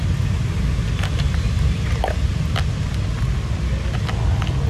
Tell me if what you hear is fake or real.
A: real